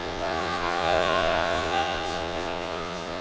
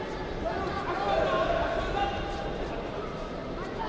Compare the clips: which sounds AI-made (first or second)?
first